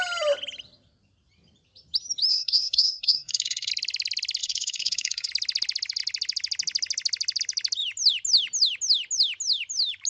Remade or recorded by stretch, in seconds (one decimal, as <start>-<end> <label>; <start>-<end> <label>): 0.0-2.3 recorded; 2.3-3.7 remade; 3.7-4.4 recorded; 4.4-5.3 remade; 5.3-10.1 recorded